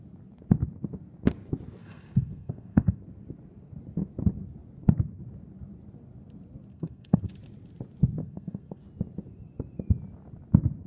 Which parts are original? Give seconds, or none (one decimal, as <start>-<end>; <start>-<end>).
0.0-1.8; 3.0-6.7; 7.3-8.2; 8.8-10.9